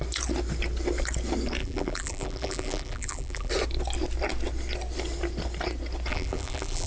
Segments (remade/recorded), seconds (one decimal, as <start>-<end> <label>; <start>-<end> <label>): 0.0-1.6 recorded; 1.6-3.5 remade; 3.5-6.1 recorded; 6.1-6.9 remade